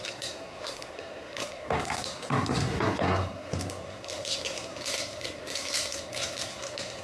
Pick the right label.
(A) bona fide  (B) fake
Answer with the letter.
B